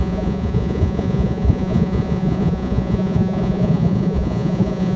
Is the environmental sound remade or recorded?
remade